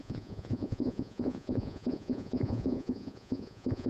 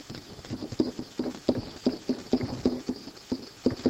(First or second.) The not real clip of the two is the first